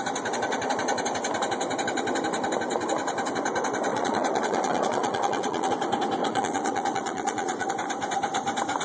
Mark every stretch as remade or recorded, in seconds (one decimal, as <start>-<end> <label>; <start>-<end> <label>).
0.0-3.9 recorded; 3.9-5.7 remade; 5.7-6.2 recorded; 6.2-7.7 remade; 7.7-8.8 recorded